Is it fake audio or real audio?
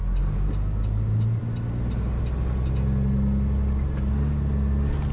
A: real